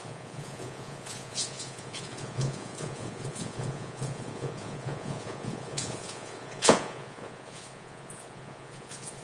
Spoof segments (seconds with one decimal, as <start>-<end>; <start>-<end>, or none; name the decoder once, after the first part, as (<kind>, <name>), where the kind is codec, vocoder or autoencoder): 0.0-9.2 (vocoder, Vocos)